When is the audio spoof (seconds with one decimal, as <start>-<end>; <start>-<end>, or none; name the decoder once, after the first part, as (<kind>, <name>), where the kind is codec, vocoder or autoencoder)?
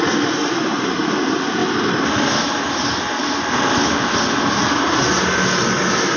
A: none